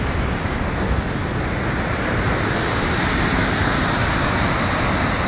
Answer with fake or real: real